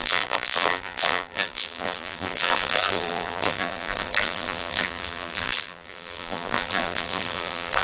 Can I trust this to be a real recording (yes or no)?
no